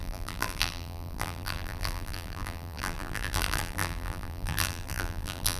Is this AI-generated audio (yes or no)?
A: yes